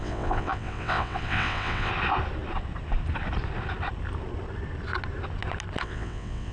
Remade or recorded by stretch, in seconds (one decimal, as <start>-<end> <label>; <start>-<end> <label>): 0.0-1.9 remade; 1.9-5.8 recorded; 5.8-6.5 remade